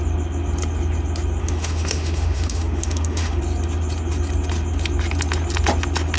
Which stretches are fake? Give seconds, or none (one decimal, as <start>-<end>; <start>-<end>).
1.4-3.4